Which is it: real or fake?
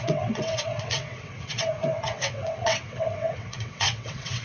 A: fake